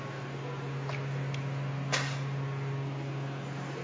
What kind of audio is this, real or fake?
real